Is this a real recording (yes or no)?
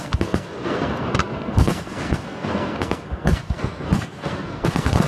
no